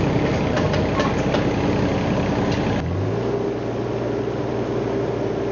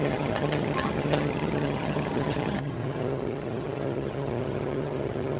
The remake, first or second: second